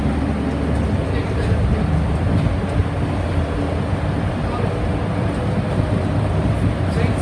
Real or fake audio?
real